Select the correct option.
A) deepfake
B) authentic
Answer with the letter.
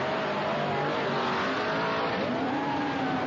B